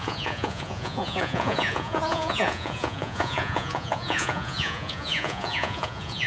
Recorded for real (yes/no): no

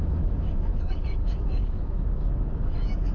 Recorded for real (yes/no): no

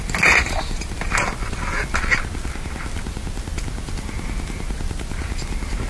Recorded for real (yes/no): yes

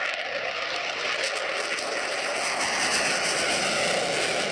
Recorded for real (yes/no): yes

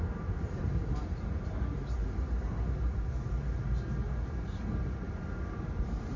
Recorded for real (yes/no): no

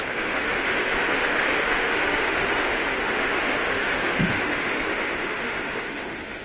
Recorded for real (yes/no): no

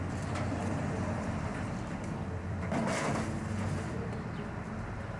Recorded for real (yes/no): yes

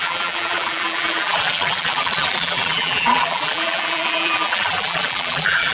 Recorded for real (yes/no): no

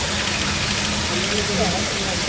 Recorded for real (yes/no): yes